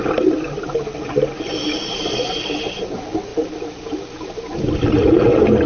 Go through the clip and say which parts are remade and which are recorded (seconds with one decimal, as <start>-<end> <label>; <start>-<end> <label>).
0.0-5.7 recorded